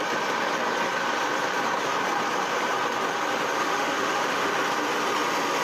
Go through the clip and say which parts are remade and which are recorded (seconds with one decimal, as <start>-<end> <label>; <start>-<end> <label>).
0.0-3.6 recorded; 3.6-4.5 remade; 4.5-5.6 recorded

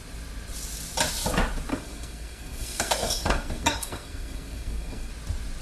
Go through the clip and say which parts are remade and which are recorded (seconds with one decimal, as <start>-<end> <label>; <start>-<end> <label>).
0.0-1.7 recorded; 1.7-5.1 remade; 5.1-5.6 recorded

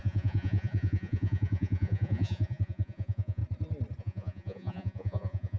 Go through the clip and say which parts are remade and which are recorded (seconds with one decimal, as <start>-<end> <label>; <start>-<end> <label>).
0.0-3.4 remade; 3.4-4.0 recorded; 4.0-5.6 remade